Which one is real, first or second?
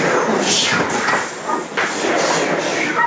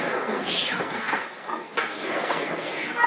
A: first